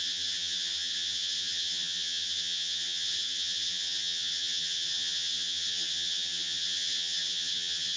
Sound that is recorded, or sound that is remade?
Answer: remade